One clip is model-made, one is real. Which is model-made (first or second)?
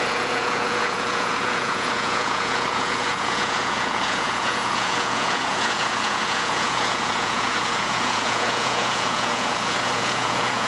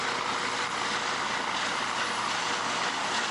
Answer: first